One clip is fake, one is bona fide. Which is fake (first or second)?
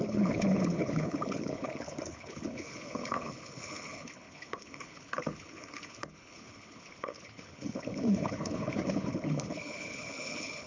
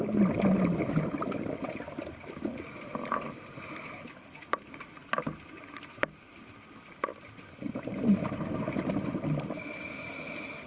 first